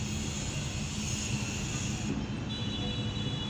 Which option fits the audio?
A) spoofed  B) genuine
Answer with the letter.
B